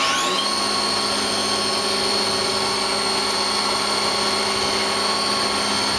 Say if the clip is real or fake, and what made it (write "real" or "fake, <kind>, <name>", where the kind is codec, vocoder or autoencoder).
real